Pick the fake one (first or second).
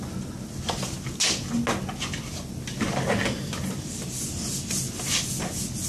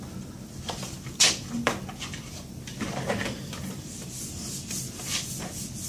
second